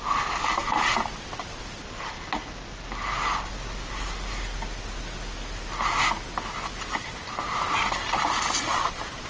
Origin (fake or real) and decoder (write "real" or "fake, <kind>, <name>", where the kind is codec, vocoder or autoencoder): real